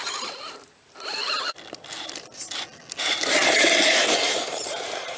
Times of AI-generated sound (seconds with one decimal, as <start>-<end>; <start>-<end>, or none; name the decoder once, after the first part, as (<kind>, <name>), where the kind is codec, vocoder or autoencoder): 3.1-5.2 (vocoder, BigVGAN v2)